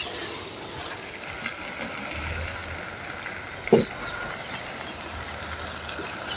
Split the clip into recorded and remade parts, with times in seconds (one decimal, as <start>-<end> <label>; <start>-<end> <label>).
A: 0.0-6.4 recorded